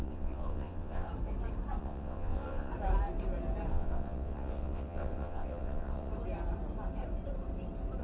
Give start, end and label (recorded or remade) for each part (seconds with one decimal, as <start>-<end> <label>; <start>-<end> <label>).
0.0-1.1 remade; 1.1-1.8 recorded; 1.8-2.7 remade; 2.7-3.7 recorded; 3.7-6.1 remade; 6.1-8.0 recorded